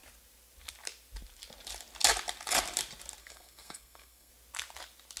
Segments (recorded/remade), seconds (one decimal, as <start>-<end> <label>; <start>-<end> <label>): 0.0-3.2 recorded; 3.2-4.3 remade; 4.3-5.2 recorded